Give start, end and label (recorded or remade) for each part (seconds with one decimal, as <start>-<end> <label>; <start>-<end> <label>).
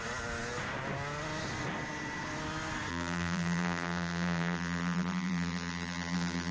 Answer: 0.0-2.9 recorded; 2.9-6.5 remade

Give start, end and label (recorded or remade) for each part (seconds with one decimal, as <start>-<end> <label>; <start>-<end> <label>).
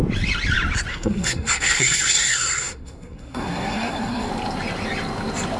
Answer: 0.0-0.9 recorded; 0.9-4.3 remade; 4.3-5.6 recorded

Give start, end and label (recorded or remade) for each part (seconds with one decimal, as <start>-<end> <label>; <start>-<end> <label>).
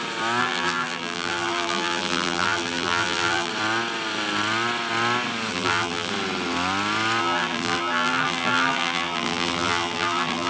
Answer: 0.0-0.4 recorded; 0.4-3.5 remade; 3.5-5.5 recorded; 5.5-6.1 remade; 6.1-7.2 recorded; 7.2-10.5 remade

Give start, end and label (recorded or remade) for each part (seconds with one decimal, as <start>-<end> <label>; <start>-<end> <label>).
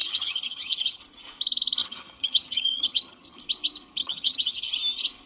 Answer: 0.0-1.0 remade; 1.0-1.8 recorded; 1.8-3.4 remade; 3.4-4.0 recorded; 4.0-4.6 remade; 4.6-5.3 recorded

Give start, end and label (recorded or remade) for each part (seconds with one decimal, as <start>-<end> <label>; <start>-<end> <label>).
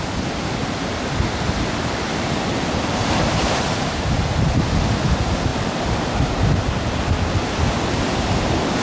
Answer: 0.0-0.6 recorded; 0.6-4.4 remade; 4.4-5.5 recorded; 5.5-7.0 remade; 7.0-8.8 recorded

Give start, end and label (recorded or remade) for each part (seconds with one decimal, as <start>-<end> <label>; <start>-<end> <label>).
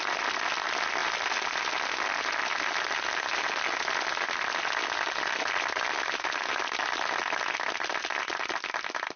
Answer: 0.0-9.2 recorded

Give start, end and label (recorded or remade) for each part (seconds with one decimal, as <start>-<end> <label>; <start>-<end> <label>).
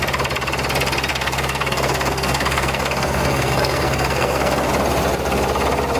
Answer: 0.0-1.1 recorded; 1.1-4.7 remade; 4.7-6.0 recorded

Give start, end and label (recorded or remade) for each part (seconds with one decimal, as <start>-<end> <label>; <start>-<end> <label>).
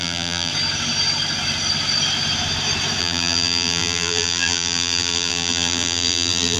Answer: 0.0-0.5 remade; 0.5-3.0 recorded; 3.0-6.6 remade